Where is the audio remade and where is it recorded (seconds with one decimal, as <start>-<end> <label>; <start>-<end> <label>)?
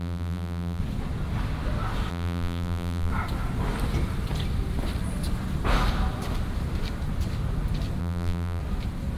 0.0-0.8 remade; 0.8-2.1 recorded; 2.1-3.1 remade; 3.1-8.0 recorded; 8.0-8.6 remade; 8.6-9.2 recorded